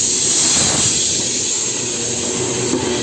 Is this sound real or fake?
real